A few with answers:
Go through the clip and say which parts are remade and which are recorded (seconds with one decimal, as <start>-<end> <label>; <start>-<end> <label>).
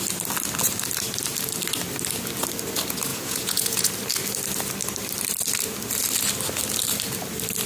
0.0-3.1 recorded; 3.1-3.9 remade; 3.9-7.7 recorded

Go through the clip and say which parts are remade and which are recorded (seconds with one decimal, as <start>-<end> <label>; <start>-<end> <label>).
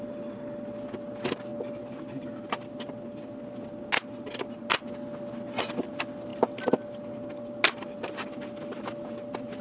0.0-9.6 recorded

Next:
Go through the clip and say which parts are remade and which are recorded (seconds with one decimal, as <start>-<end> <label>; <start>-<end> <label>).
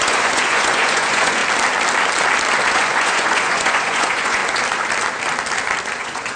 0.0-1.4 remade; 1.4-2.7 recorded; 2.7-4.4 remade; 4.4-6.0 recorded; 6.0-6.4 remade